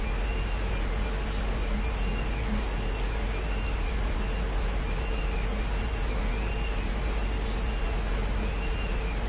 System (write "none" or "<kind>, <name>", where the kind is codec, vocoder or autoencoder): none